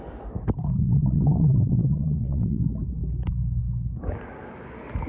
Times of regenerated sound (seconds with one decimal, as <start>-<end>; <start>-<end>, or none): 0.8-2.6